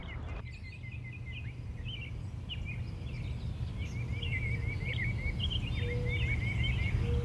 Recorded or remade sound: recorded